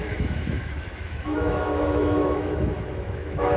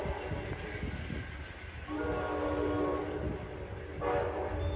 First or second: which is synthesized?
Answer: first